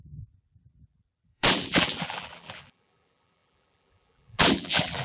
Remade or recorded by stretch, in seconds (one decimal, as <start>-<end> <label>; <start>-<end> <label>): 0.0-5.0 remade